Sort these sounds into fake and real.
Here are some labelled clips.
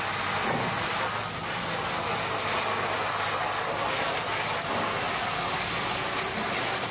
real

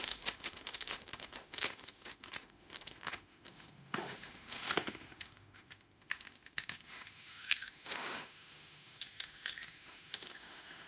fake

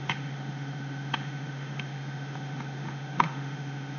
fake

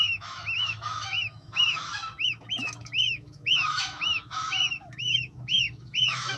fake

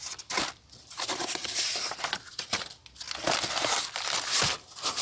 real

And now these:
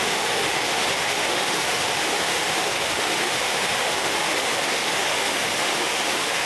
fake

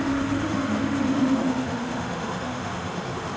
fake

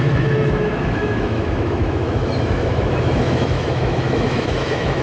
fake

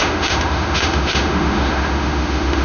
fake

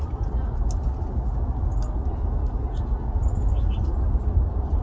real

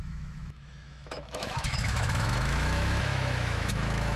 fake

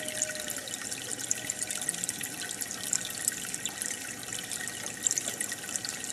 real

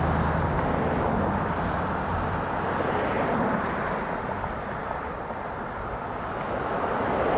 real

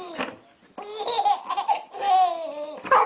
real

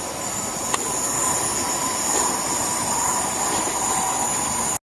real